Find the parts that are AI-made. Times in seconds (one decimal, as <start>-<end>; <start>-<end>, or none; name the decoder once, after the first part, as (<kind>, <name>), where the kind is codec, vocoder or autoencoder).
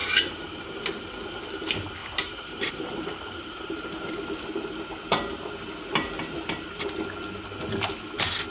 0.0-0.6 (vocoder, BigVGAN v2); 2.0-6.8